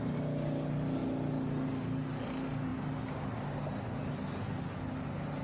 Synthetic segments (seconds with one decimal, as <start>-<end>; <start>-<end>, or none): none

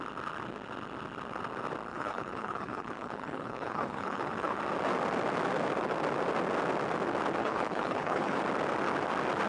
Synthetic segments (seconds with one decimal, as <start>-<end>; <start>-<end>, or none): 1.9-4.6; 7.4-8.4

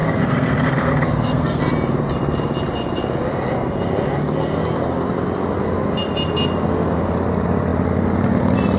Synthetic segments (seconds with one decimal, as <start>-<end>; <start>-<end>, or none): 0.0-1.6

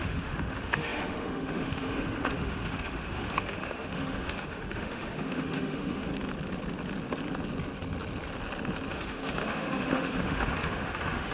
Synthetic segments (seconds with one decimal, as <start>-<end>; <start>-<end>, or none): 0.0-6.1; 8.9-11.3